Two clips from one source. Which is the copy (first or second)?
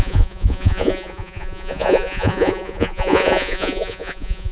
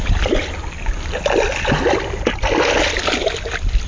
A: first